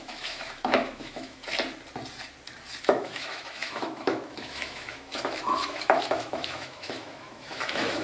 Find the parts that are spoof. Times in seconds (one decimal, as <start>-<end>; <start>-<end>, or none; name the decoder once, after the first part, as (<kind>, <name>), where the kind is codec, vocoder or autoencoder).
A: 0.0-1.4 (autoencoder, DAC-VAE); 2.8-8.0

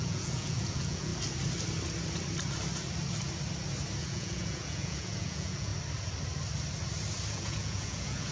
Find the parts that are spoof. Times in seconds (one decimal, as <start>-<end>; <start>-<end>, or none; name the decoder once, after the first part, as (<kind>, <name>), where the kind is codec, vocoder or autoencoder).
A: 0.0-1.1 (vocoder, Vocos); 4.0-5.7; 7.3-8.3

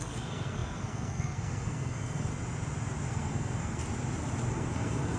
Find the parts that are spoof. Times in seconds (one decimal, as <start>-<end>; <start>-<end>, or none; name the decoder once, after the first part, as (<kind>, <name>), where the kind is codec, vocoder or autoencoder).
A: 0.0-2.3 (codec, SNAC); 3.1-3.8; 4.5-5.2

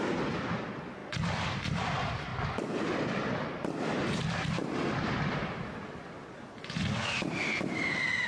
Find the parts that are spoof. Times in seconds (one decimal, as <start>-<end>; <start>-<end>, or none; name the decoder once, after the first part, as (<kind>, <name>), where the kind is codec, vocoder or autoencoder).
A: none

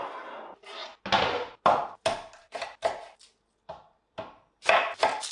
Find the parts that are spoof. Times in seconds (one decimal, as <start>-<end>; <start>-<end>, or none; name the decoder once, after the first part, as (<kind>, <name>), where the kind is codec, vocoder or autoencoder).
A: none